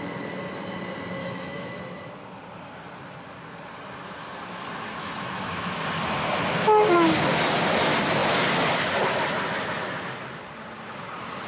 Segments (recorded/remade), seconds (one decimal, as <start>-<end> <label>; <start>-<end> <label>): 0.0-1.2 recorded; 1.2-1.8 remade; 1.8-5.0 recorded; 5.0-5.8 remade; 5.8-11.5 recorded

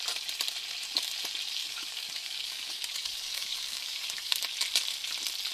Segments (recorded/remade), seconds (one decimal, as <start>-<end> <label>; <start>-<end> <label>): 0.0-1.6 recorded; 1.6-4.3 remade; 4.3-5.5 recorded